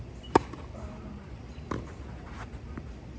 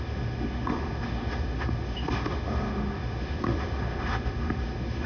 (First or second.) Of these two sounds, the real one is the first